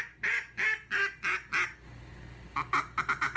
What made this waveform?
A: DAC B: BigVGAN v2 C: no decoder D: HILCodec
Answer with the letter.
C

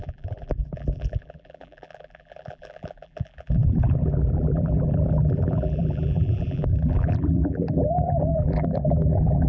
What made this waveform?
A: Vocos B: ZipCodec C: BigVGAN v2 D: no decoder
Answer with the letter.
C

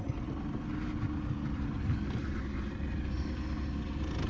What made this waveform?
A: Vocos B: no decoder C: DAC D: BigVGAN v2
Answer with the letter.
B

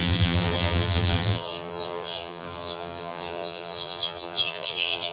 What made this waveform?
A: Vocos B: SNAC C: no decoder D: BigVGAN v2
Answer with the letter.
D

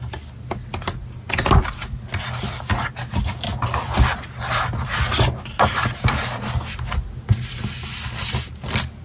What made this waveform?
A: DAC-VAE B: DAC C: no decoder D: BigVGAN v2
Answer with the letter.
C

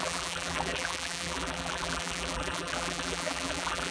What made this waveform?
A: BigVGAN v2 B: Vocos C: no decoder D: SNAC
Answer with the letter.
A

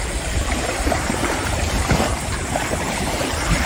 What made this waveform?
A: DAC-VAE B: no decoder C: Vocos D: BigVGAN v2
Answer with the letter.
D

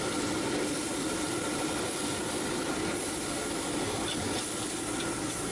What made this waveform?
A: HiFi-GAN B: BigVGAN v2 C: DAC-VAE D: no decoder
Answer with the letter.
D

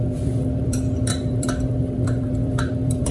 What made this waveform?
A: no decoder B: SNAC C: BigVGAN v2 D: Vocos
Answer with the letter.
C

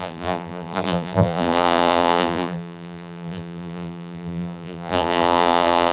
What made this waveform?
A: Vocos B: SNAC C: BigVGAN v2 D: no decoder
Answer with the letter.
C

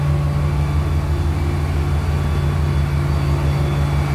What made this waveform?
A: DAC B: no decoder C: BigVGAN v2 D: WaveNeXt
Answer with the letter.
B